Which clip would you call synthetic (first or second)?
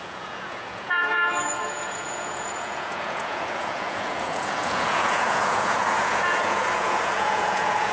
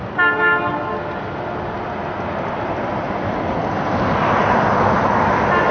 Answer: first